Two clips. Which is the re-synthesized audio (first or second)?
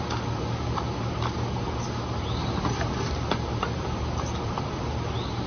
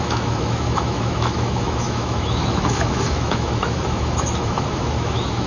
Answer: second